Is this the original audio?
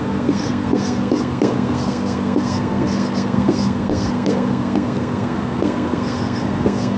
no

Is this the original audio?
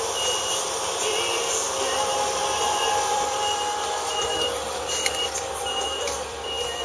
no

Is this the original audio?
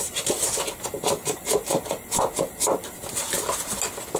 yes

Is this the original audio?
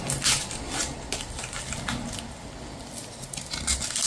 yes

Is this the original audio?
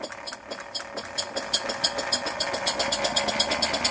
yes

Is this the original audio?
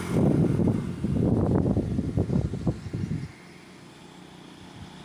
yes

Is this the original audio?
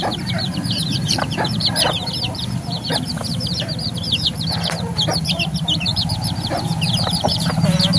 no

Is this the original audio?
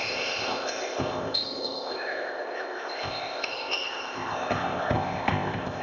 no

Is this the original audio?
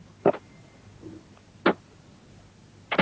yes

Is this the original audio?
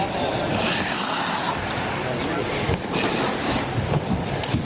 no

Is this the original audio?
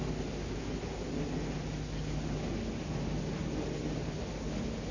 yes